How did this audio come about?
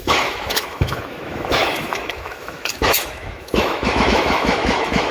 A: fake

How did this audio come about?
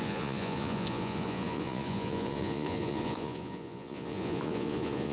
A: fake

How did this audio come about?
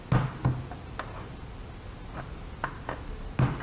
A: real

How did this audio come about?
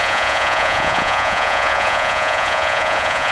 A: fake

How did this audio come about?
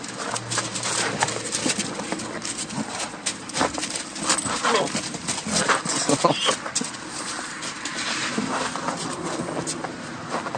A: fake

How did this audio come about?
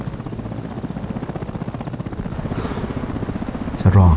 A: real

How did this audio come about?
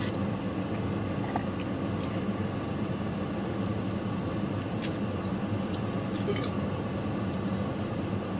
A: real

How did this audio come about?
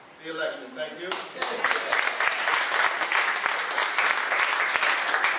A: real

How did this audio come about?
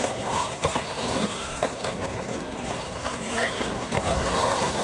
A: fake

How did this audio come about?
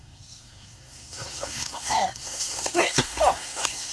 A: fake